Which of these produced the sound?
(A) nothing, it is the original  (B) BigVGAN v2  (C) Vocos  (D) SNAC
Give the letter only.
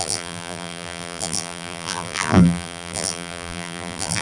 B